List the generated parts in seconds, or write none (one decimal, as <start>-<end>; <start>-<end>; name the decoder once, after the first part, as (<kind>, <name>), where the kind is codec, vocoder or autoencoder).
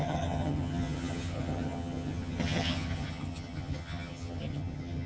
0.0-5.1 (vocoder, HiFi-GAN)